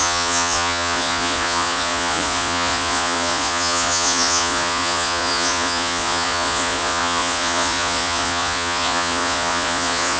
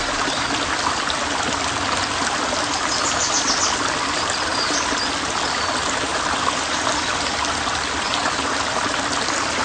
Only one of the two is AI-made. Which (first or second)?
first